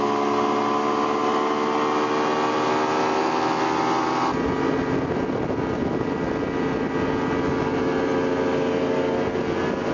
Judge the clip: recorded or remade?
recorded